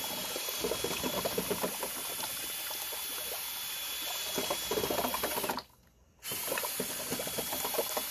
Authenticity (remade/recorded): recorded